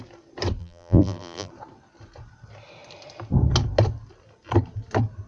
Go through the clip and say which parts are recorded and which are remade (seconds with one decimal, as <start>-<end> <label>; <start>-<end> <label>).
0.0-0.6 recorded; 0.6-1.5 remade; 1.5-5.3 recorded